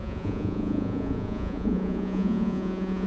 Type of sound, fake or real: fake